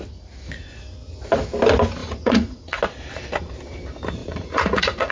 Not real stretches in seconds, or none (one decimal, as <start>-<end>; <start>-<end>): 2.0-2.8; 4.2-5.1